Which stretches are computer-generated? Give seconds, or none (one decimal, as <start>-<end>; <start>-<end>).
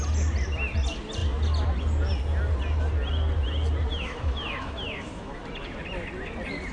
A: 3.9-5.4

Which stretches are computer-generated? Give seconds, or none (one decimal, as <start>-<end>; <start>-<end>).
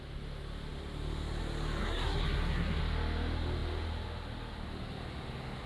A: 1.8-2.8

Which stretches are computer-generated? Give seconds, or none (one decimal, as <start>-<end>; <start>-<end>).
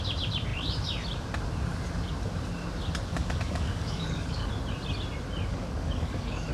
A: 3.1-4.5; 5.5-6.5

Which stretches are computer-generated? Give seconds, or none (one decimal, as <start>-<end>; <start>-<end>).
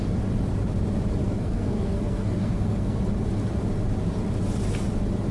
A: 1.2-3.0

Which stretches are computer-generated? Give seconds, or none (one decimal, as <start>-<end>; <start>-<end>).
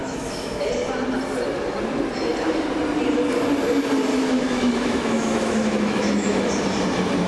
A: 0.0-0.7; 4.1-6.5